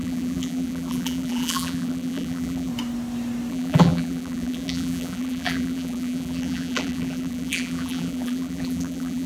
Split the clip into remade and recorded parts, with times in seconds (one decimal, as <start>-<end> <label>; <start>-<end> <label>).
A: 0.0-2.7 remade; 2.7-3.5 recorded; 3.5-9.3 remade